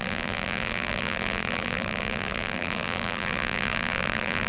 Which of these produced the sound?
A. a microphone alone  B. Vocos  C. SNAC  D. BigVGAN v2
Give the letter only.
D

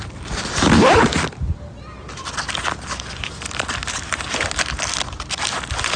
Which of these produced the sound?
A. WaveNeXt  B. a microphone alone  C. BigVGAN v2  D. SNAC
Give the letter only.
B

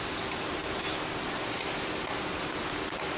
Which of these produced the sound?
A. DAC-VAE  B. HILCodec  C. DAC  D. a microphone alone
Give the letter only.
D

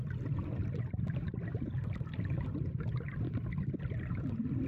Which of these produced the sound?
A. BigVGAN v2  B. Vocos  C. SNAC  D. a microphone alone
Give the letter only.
D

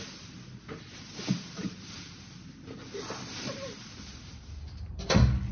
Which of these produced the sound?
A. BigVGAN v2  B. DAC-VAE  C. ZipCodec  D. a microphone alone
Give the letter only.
D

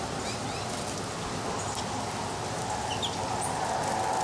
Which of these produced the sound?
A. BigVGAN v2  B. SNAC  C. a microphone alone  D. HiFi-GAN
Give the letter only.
C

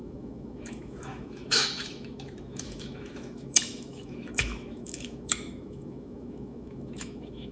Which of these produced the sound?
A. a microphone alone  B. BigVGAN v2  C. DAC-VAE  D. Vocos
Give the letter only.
C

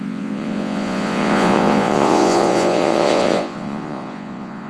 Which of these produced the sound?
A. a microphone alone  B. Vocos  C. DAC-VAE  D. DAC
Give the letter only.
B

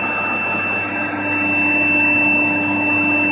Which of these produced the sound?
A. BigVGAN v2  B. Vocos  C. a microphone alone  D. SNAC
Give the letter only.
C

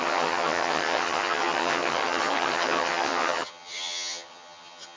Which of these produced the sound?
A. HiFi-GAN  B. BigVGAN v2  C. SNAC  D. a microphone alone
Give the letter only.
A